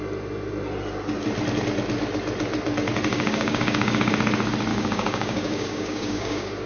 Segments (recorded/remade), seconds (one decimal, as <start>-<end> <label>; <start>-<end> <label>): 0.0-3.1 recorded; 3.1-4.1 remade; 4.1-4.7 recorded; 4.7-6.7 remade